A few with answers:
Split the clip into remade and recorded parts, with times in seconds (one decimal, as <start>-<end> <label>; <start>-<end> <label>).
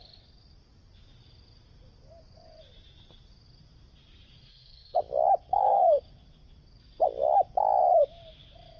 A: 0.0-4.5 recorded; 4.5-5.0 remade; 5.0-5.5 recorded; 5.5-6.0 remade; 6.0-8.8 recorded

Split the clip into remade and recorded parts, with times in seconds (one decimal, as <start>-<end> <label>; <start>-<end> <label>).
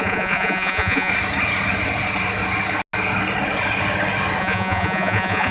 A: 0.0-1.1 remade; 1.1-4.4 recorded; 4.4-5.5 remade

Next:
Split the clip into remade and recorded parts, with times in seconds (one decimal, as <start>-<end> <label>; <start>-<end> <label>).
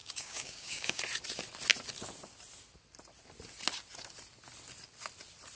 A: 0.0-1.0 remade; 1.0-5.6 recorded